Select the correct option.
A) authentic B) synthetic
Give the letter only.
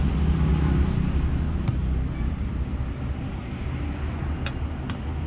A